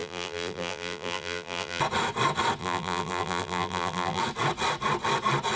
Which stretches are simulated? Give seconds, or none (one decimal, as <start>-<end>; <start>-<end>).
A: 0.0-1.8; 2.6-4.2